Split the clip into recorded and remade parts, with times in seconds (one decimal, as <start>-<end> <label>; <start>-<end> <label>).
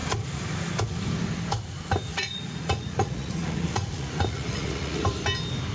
0.0-2.1 recorded; 2.1-5.0 remade; 5.0-5.7 recorded